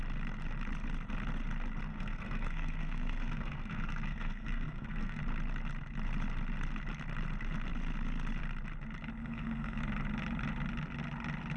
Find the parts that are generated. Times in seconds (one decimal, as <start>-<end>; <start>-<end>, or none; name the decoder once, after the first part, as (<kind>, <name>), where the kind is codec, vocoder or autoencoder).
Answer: 1.9-5.2 (codec, SNAC); 9.2-9.8